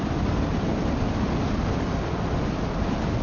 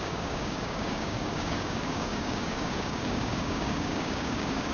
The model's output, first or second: second